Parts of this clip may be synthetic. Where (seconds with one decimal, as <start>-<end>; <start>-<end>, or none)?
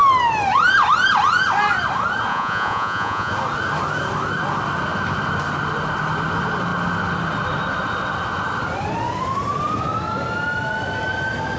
2.3-3.3